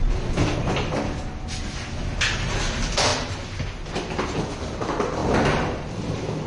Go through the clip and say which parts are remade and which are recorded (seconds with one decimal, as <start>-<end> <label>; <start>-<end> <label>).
0.0-6.5 recorded